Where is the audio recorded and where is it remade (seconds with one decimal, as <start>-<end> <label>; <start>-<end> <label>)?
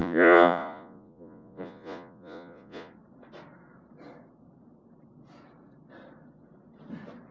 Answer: 0.0-2.9 remade; 2.9-7.3 recorded